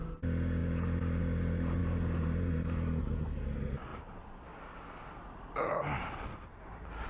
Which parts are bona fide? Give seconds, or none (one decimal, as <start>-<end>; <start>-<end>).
0.0-7.1